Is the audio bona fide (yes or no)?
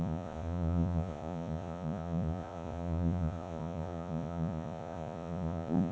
no